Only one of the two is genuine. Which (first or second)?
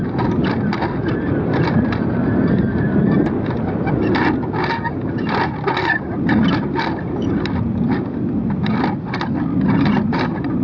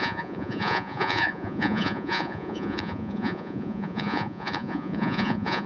first